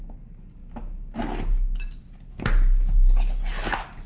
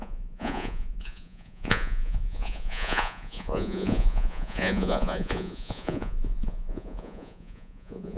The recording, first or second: first